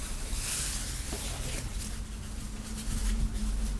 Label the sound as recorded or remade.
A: recorded